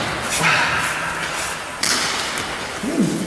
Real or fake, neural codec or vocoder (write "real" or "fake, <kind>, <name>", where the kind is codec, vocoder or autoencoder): real